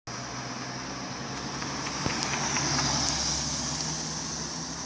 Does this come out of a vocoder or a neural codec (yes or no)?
no